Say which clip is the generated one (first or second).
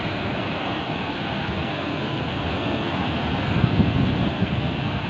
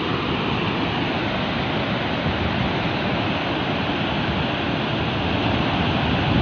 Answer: first